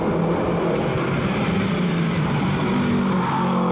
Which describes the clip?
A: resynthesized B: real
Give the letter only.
B